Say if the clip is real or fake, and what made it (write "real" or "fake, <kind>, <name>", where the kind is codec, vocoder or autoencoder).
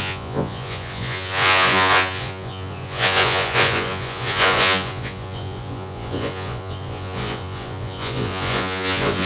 fake, vocoder, Vocos